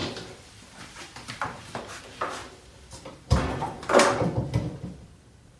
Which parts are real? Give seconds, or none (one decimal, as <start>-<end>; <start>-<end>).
none